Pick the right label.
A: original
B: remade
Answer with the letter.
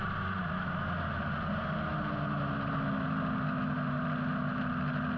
A